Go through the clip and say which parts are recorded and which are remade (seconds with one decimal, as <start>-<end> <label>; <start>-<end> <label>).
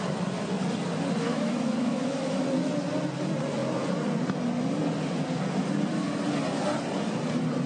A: 0.0-1.3 recorded; 1.3-2.4 remade; 2.4-7.7 recorded